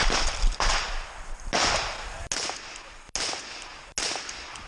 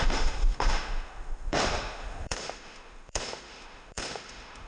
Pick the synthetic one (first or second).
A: second